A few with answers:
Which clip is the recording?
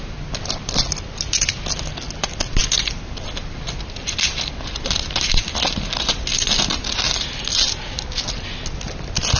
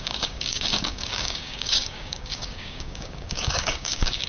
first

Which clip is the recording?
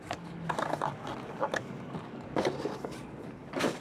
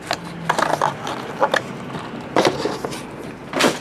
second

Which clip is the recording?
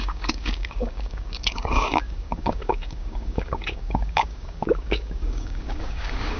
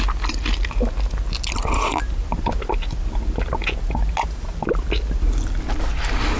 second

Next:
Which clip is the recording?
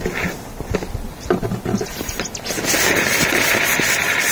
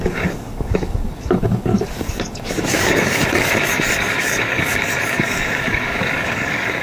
first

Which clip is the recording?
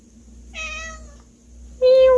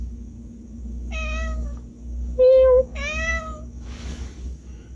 first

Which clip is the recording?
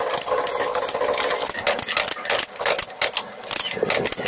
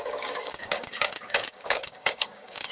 first